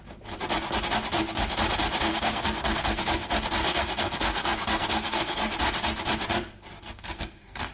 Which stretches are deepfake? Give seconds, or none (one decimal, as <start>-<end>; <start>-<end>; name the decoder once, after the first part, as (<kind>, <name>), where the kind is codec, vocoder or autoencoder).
2.1-3.3 (codec, SNAC); 3.7-5.5; 6.8-7.7